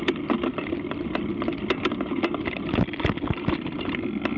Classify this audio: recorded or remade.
recorded